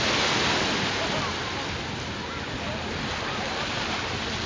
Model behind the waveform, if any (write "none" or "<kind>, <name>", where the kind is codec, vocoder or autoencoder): none